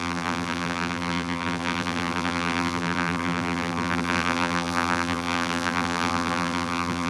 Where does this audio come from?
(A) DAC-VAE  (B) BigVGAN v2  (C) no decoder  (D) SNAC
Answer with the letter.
B